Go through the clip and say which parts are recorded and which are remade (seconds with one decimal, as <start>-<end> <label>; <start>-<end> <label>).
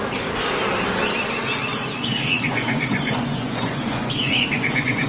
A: 0.0-1.7 recorded; 1.7-5.1 remade